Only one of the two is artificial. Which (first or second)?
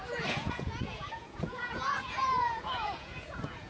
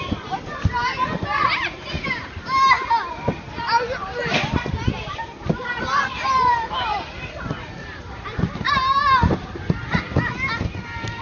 first